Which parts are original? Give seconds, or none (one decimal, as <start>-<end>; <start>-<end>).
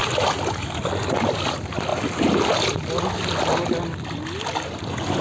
0.0-5.2